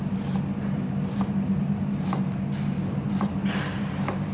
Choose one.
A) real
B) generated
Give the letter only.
A